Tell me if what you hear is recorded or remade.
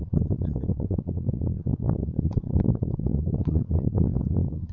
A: remade